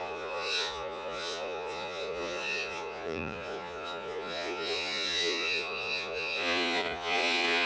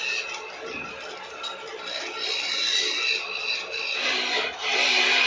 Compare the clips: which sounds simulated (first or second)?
first